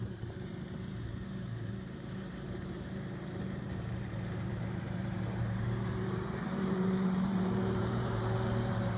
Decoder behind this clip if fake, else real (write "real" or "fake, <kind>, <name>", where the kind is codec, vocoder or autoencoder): fake, vocoder, BigVGAN v2